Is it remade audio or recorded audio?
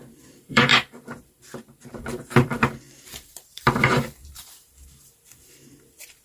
remade